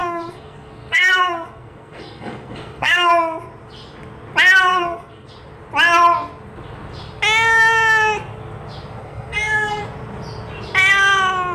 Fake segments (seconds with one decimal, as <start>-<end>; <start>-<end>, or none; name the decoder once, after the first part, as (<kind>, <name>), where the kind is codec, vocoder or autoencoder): 0.0-3.1 (codec, SNAC); 4.7-5.3; 9.0-9.8